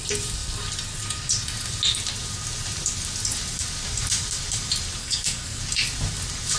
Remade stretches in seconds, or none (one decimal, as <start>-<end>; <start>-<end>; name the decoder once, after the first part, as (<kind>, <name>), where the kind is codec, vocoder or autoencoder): 5.0-5.6 (codec, SNAC)